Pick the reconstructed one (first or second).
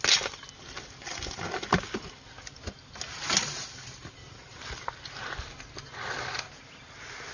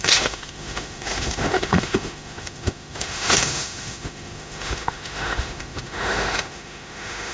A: second